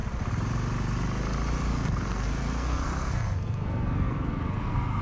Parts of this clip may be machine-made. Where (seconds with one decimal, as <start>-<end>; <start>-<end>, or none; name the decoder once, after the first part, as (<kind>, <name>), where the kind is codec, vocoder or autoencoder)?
1.7-5.0 (codec, SNAC)